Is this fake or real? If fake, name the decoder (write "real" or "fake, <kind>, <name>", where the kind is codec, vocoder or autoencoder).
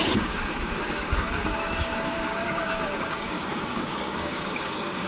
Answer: fake, codec, DAC